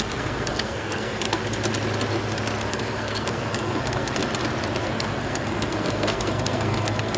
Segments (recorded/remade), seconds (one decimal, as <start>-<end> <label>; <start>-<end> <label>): 0.0-1.4 remade; 1.4-2.7 recorded; 2.7-4.2 remade; 4.2-4.8 recorded; 4.8-7.2 remade